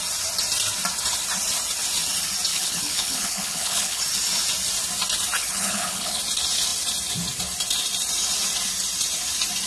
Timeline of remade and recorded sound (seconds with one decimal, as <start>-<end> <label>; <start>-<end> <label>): 0.0-2.5 recorded; 2.5-4.0 remade; 4.0-5.4 recorded; 5.4-6.2 remade; 6.2-9.7 recorded